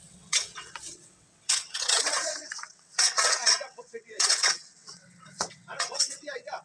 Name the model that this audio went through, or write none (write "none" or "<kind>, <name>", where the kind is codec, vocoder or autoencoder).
vocoder, WaveNeXt